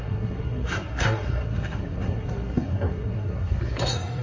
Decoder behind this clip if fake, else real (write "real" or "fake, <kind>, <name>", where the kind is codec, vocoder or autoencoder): fake, codec, SNAC